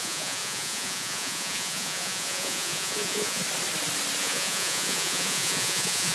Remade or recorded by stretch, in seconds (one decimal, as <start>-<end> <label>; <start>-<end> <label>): 0.0-3.4 remade; 3.4-4.2 recorded; 4.2-6.1 remade